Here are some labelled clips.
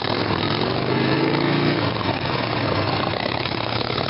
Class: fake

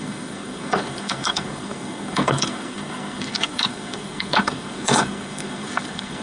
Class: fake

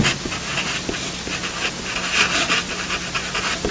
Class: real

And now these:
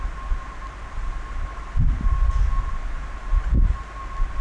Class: real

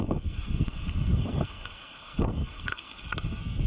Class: fake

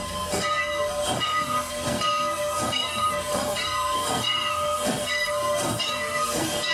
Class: fake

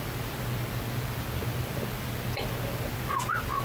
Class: real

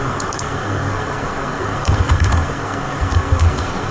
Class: fake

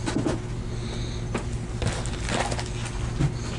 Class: real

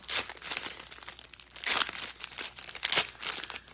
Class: real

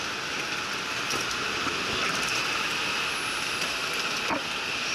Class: real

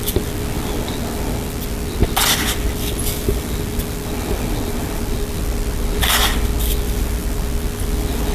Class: real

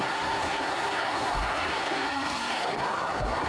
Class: fake